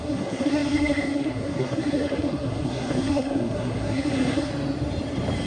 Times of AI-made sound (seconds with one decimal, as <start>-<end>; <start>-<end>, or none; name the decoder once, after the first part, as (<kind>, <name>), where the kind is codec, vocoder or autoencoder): 0.0-4.5 (codec, SNAC)